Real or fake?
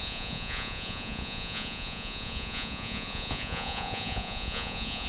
fake